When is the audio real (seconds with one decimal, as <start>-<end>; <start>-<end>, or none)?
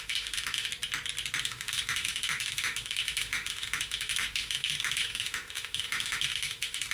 0.7-1.4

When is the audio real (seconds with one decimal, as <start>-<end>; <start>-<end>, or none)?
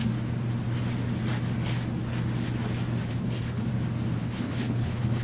0.0-3.1; 3.7-4.2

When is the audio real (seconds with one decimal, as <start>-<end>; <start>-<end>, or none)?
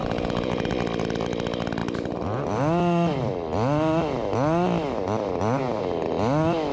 0.7-6.7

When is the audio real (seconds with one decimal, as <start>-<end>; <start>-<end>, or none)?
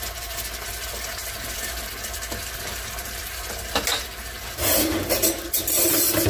0.0-1.2; 5.0-6.3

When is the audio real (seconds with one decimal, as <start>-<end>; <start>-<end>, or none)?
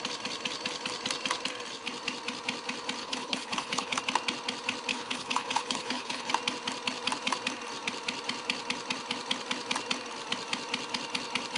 0.0-3.0; 4.0-4.9; 6.3-11.6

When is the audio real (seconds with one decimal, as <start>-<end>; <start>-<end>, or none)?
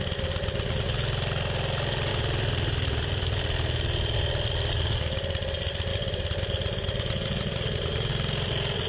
0.0-2.1; 3.4-5.9; 8.1-8.9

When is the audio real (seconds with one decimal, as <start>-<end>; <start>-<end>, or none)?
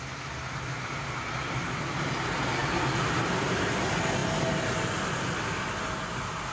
0.0-6.5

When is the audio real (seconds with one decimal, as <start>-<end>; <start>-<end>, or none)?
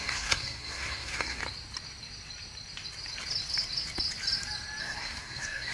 1.4-4.8